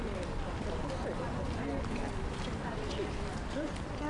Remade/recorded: recorded